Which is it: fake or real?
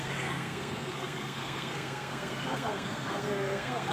fake